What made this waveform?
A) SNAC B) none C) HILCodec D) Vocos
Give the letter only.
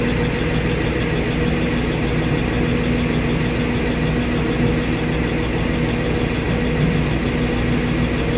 B